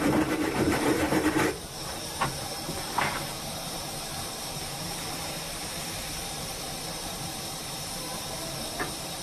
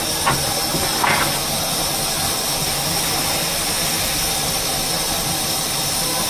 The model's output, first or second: first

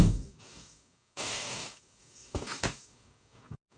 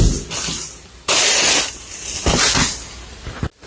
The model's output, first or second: first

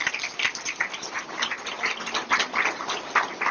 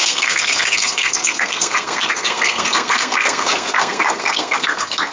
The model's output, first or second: second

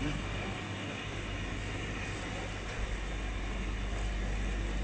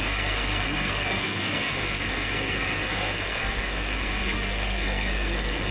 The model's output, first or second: second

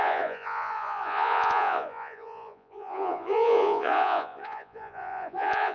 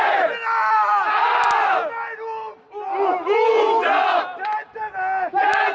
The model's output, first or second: first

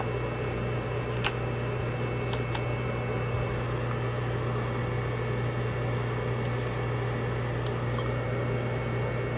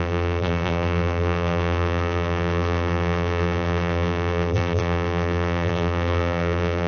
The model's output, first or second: second